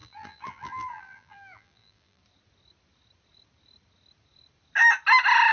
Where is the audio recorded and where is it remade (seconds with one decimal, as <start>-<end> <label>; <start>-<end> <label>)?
0.0-2.2 remade; 2.2-5.5 recorded